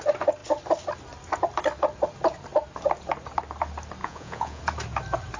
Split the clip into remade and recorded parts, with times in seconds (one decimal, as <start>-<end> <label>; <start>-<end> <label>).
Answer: 0.0-4.0 recorded; 4.0-4.6 remade; 4.6-5.4 recorded